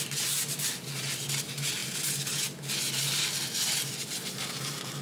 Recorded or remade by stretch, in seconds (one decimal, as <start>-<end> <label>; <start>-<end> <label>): 0.0-5.0 recorded